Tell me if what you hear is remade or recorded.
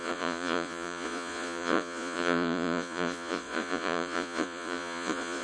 remade